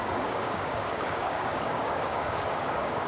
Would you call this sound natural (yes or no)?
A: no